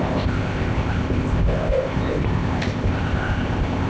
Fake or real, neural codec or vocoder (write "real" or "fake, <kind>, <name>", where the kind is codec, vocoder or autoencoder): fake, codec, ZipCodec